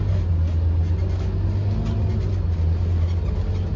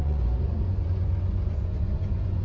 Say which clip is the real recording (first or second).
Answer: first